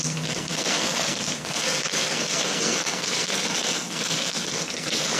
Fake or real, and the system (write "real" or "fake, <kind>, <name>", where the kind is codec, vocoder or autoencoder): fake, codec, SNAC